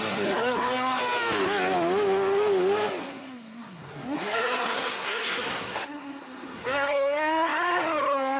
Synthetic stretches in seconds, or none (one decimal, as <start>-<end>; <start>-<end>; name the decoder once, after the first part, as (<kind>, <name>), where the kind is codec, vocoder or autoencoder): 0.0-1.0 (codec, SNAC); 3.0-8.4